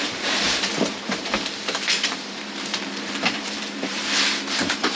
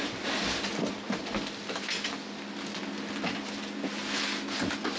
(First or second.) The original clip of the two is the second